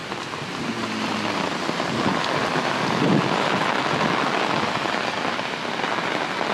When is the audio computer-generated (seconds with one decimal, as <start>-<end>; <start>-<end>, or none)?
none